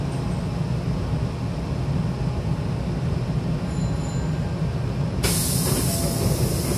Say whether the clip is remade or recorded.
recorded